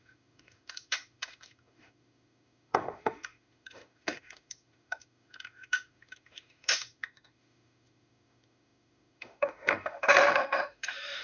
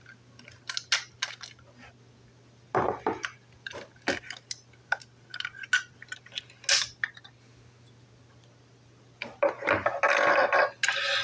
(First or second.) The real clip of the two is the second